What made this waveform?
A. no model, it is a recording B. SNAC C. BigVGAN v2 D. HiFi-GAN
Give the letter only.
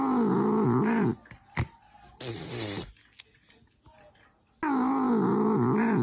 A